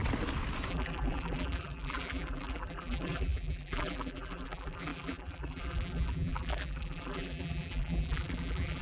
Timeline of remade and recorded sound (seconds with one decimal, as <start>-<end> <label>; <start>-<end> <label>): 0.0-0.7 recorded; 0.7-8.8 remade